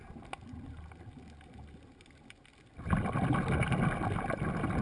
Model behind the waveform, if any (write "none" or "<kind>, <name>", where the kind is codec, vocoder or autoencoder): none